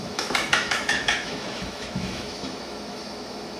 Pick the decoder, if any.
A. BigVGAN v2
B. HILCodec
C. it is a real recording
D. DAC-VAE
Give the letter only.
D